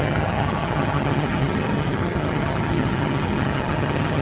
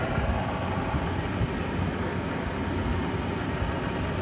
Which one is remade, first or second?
first